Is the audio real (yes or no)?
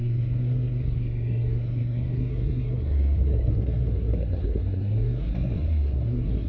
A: no